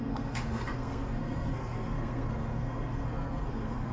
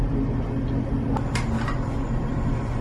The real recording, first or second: second